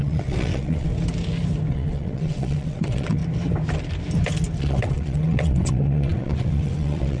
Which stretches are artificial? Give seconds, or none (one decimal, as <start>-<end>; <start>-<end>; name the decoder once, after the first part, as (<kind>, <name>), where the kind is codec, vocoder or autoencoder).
0.0-0.9 (vocoder, WaveNeXt); 1.7-3.2; 4.6-7.2